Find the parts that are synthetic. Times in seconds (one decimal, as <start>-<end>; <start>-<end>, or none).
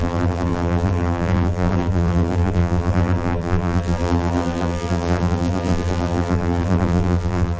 0.0-7.6